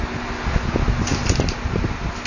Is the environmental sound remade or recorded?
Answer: recorded